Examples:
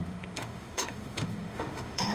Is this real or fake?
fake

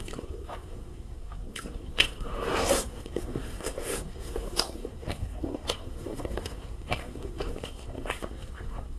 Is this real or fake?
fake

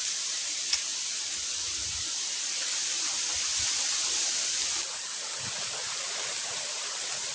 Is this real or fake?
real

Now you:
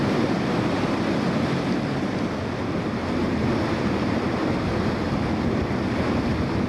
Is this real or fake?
real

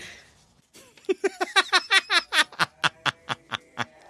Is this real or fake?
real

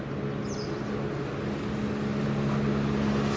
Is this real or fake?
real